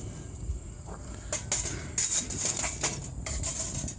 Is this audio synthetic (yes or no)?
no